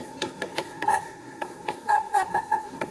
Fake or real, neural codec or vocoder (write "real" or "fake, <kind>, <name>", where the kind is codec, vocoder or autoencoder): fake, codec, SNAC